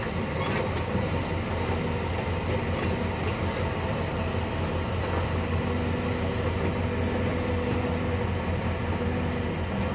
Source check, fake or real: real